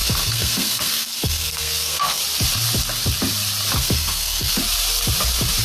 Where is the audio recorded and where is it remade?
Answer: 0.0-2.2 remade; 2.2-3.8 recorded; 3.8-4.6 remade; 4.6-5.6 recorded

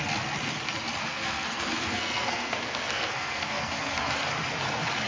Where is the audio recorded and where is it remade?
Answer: 0.0-1.0 recorded; 1.0-4.1 remade; 4.1-5.1 recorded

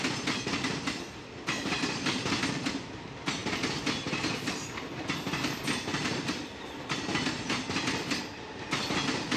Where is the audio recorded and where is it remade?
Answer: 0.0-9.4 recorded

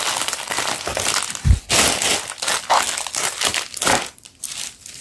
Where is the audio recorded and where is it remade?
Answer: 0.0-5.0 recorded

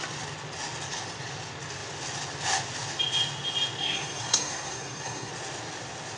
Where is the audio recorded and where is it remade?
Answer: 0.0-3.8 recorded; 3.8-5.3 remade; 5.3-6.2 recorded

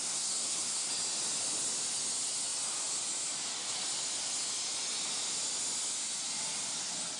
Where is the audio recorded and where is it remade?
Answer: 0.0-0.9 remade; 0.9-7.2 recorded

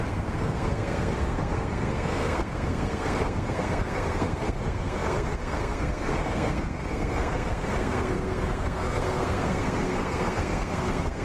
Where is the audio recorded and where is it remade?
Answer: 0.0-11.2 remade

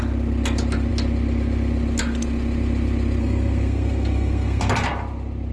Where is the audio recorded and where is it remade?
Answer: 0.0-3.2 recorded; 3.2-4.7 remade; 4.7-5.5 recorded